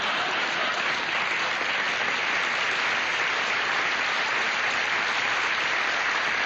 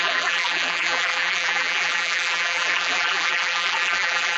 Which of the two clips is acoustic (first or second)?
first